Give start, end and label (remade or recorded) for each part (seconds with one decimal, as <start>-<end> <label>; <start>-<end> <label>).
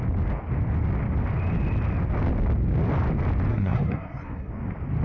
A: 0.0-3.5 recorded; 3.5-4.5 remade; 4.5-5.0 recorded